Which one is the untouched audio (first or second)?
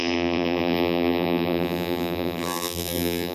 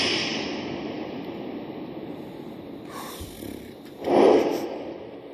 second